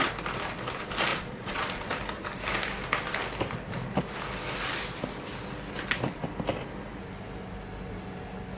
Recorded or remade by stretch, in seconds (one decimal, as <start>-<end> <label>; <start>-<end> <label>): 0.0-1.1 recorded; 1.1-1.9 remade; 1.9-8.6 recorded